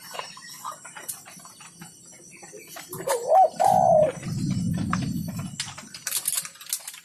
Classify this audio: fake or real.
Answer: real